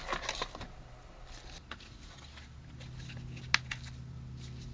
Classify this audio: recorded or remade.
recorded